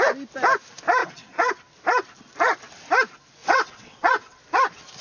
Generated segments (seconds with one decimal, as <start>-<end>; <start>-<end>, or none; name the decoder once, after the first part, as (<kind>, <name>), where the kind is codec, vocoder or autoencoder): 1.0-1.6 (vocoder, WaveNeXt); 3.4-4.4